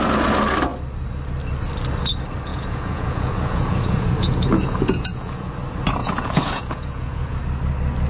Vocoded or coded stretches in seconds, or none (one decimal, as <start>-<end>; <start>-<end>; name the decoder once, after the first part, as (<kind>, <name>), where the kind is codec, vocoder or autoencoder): 2.5-5.5 (vocoder, Vocos); 6.0-7.4